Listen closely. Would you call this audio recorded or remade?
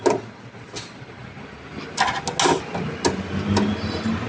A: recorded